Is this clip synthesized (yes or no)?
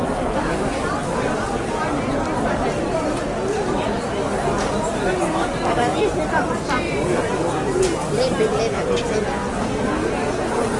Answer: no